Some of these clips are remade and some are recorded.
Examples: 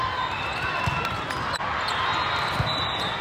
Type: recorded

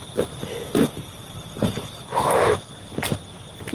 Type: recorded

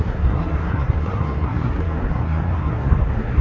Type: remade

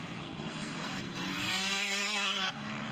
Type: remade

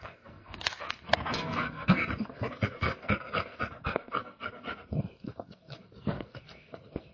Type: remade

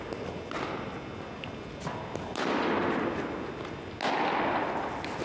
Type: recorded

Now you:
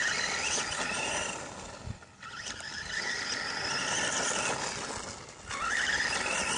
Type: recorded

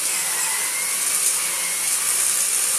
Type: recorded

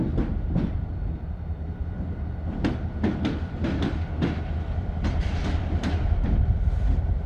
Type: recorded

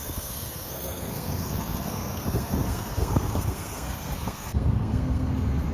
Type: remade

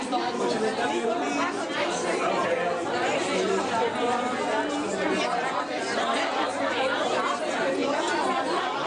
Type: recorded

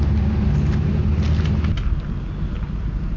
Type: recorded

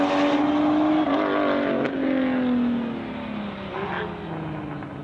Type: recorded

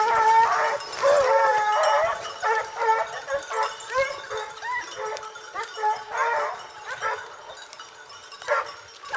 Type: recorded